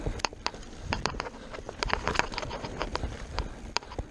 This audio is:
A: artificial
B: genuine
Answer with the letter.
A